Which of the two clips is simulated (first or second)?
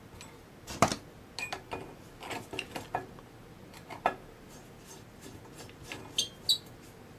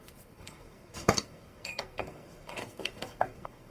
second